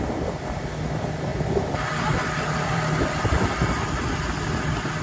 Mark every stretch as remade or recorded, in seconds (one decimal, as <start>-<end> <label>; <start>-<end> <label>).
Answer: 0.0-1.3 recorded; 1.3-4.3 remade; 4.3-5.0 recorded